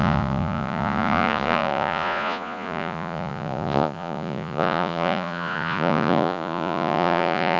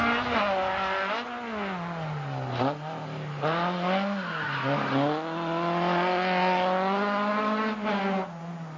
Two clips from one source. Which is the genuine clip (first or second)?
second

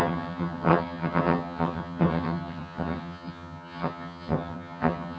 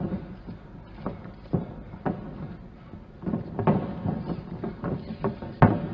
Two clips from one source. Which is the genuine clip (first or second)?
second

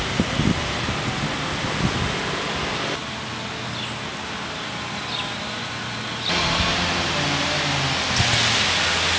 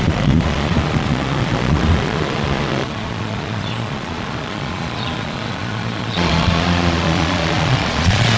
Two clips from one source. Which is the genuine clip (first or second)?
first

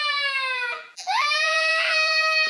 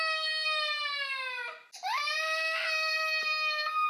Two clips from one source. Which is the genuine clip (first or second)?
second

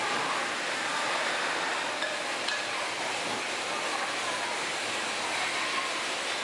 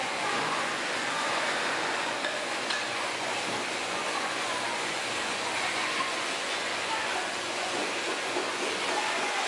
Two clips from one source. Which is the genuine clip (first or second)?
first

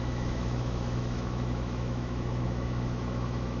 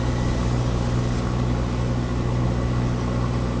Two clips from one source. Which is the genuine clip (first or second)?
second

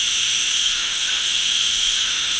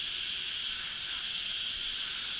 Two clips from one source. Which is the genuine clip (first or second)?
second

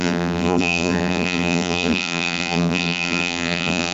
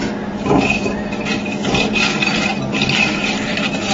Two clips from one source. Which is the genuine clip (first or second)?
second